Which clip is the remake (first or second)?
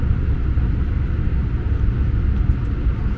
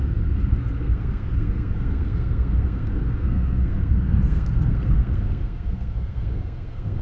second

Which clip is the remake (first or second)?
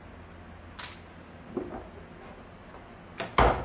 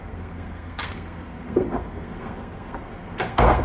second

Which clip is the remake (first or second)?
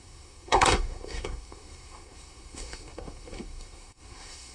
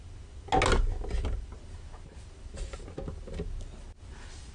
first